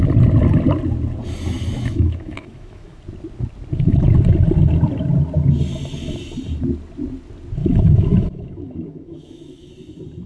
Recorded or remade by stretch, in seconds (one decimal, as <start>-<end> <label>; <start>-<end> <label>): 0.0-1.7 recorded; 1.7-3.0 remade; 3.0-7.6 recorded; 7.6-9.7 remade; 9.7-10.3 recorded